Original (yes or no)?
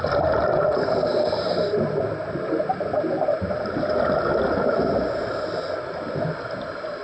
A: yes